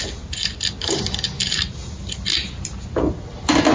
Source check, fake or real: real